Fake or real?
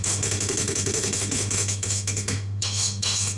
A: fake